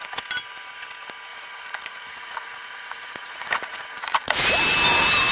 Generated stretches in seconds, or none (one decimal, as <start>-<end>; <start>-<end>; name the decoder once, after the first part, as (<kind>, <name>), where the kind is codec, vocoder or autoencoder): 1.3-4.5 (vocoder, Vocos)